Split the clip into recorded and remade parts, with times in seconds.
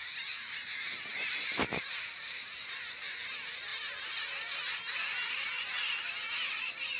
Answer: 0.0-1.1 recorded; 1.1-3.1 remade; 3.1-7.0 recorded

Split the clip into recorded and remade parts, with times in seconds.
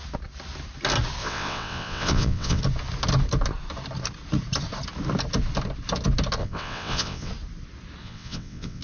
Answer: 0.0-1.2 recorded; 1.2-2.6 remade; 2.6-6.4 recorded; 6.4-7.3 remade; 7.3-8.0 recorded; 8.0-8.8 remade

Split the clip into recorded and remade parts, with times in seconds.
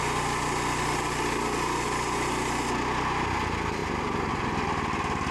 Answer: 0.0-5.3 recorded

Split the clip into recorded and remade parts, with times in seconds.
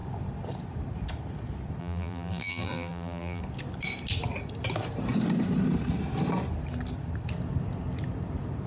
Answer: 0.0-1.8 recorded; 1.8-3.4 remade; 3.4-8.7 recorded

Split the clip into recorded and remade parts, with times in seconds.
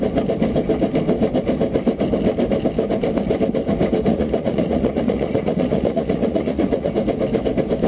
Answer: 0.0-4.1 recorded; 4.1-6.9 remade; 6.9-7.9 recorded